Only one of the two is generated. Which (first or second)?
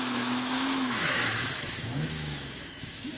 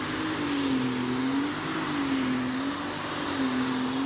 first